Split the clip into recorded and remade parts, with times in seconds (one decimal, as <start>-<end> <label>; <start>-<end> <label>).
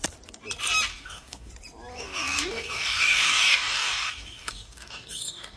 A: 0.0-0.9 recorded; 0.9-1.5 remade; 1.5-1.9 recorded; 1.9-5.6 remade